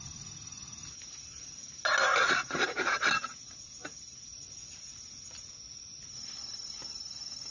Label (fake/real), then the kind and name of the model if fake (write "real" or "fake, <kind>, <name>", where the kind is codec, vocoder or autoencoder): real